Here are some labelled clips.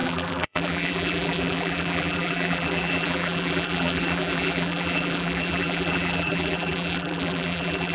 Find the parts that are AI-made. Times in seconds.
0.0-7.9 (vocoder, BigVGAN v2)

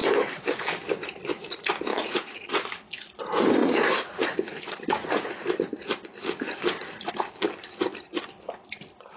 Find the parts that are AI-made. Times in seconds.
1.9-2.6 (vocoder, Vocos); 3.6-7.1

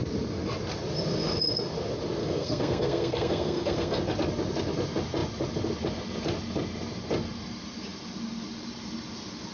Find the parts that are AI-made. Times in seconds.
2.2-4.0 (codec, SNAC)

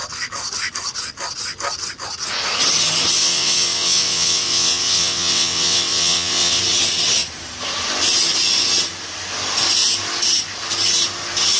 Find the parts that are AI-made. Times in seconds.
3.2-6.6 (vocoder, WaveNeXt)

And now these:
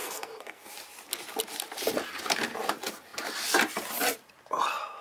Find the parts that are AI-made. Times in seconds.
0.0-0.7 (codec, SNAC)

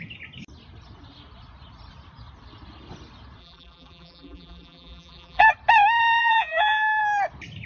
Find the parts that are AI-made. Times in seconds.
3.4-5.5 (vocoder, BigVGAN v2); 6.2-7.0

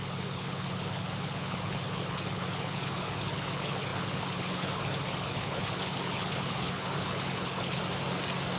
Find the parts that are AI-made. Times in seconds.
0.0-7.8 (codec, HILCodec)

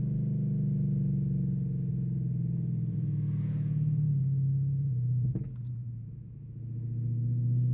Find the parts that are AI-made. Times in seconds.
1.9-6.5 (vocoder, Vocos)